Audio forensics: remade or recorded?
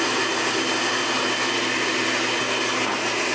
recorded